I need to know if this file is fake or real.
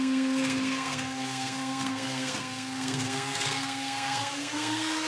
fake